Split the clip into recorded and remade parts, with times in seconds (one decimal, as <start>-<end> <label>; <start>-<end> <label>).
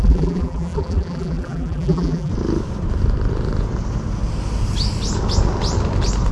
0.0-2.3 remade; 2.3-6.3 recorded